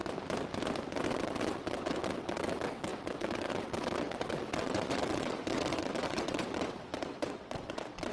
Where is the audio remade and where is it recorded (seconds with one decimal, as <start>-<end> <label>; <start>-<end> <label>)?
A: 0.0-1.1 recorded; 1.1-8.1 remade